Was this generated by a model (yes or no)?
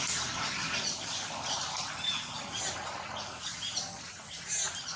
no